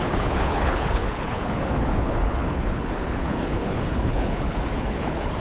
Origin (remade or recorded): remade